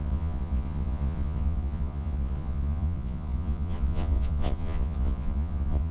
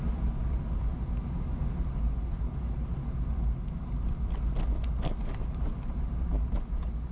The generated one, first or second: first